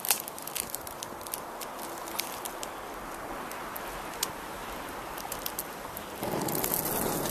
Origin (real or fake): real